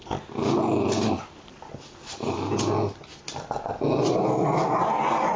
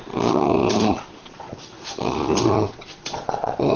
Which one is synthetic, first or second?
second